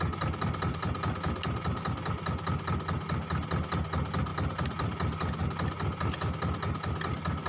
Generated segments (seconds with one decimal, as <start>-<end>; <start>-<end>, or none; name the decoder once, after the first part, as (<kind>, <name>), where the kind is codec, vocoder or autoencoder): 4.3-5.4 (vocoder, BigVGAN v2)